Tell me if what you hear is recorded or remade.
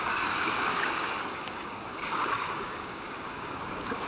remade